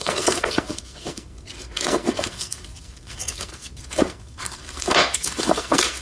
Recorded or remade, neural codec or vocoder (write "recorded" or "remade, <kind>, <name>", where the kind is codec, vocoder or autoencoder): remade, codec, SNAC